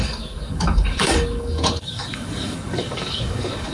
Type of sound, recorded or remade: remade